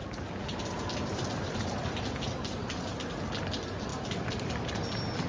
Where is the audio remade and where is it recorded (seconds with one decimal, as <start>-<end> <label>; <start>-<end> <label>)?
0.0-3.2 remade; 3.2-3.9 recorded; 3.9-4.7 remade; 4.7-5.3 recorded